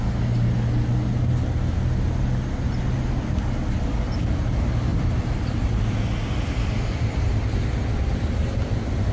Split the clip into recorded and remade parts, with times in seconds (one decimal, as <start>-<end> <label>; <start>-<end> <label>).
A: 0.0-4.9 recorded; 4.9-7.5 remade; 7.5-9.1 recorded